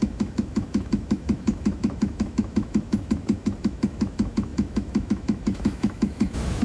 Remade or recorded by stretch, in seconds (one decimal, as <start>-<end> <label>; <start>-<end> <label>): 0.0-6.6 remade